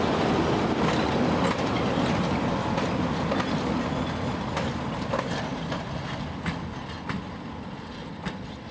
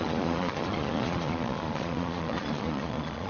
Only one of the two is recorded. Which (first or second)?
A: first